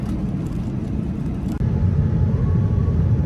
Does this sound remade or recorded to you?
recorded